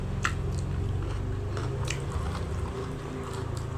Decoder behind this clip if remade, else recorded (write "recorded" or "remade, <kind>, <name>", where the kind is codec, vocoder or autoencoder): remade, vocoder, BigVGAN v2